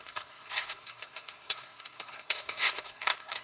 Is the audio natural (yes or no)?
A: no